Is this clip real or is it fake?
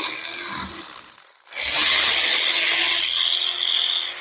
real